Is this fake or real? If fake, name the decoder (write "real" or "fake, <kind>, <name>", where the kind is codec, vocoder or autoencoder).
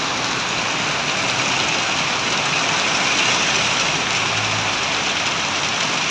real